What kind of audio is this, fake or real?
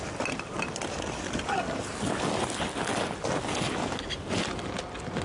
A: real